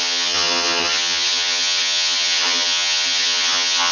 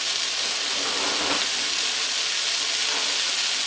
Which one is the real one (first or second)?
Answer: second